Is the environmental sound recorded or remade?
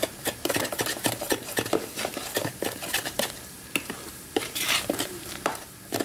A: remade